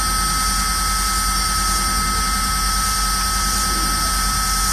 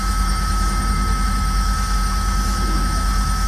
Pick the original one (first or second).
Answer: first